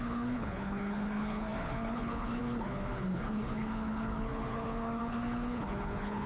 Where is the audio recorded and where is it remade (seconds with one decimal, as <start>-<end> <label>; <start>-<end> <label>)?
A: 0.0-6.3 remade